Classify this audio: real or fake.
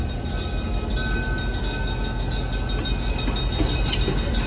real